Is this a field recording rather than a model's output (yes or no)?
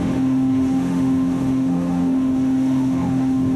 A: no